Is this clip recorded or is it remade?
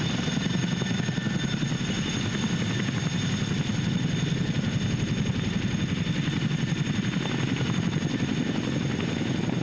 recorded